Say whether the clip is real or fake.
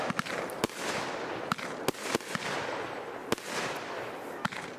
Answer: real